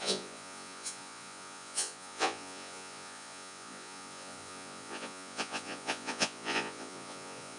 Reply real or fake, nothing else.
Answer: fake